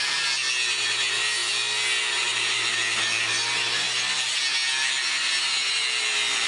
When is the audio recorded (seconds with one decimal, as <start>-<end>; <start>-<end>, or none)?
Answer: 0.0-6.5